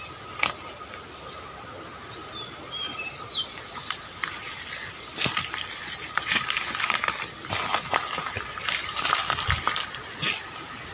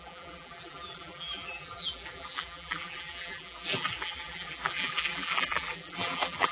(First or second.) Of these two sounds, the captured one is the first